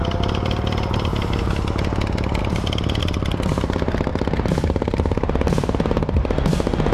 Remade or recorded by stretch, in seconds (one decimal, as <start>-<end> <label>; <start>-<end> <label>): 0.0-2.4 recorded; 2.4-3.0 remade; 3.0-4.1 recorded; 4.1-6.3 remade; 6.3-6.9 recorded